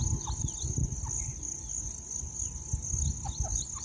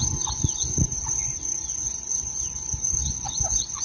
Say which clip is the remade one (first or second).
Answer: second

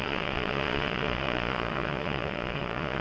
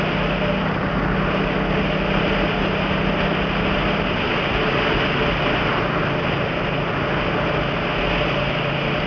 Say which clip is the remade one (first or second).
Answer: first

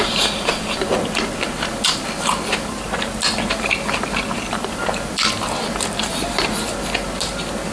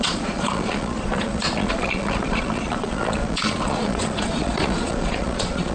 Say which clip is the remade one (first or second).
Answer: second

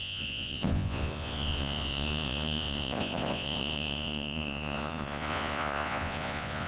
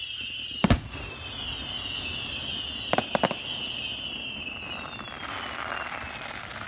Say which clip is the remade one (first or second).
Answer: first